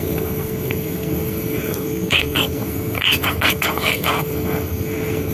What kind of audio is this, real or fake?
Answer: fake